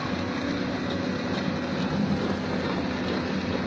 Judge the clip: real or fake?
real